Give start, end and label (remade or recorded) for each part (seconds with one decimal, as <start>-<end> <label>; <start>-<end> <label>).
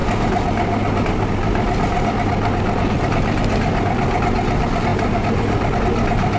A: 0.0-4.9 recorded; 4.9-5.8 remade; 5.8-6.4 recorded